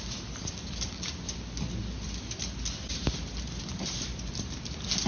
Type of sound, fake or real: real